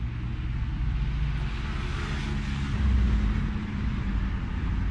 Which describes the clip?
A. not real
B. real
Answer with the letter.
B